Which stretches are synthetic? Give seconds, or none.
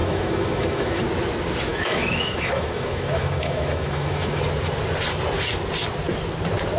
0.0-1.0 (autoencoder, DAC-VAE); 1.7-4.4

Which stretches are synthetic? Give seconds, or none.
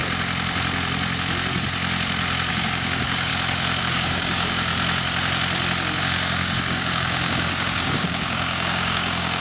2.5-3.3 (codec, DAC); 3.8-4.7; 6.0-9.4